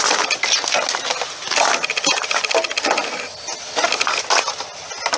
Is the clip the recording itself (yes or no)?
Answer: yes